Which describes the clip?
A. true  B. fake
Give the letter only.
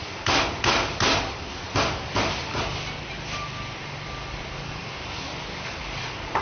A